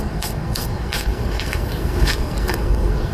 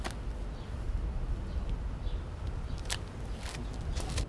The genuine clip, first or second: second